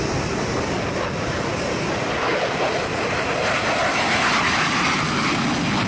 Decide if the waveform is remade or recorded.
recorded